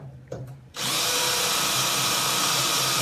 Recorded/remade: remade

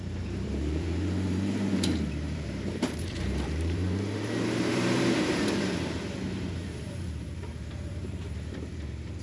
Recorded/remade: remade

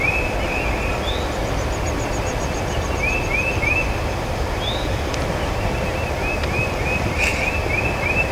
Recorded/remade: recorded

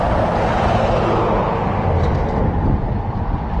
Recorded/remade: recorded